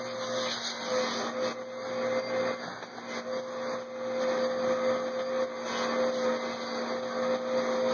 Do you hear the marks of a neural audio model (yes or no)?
no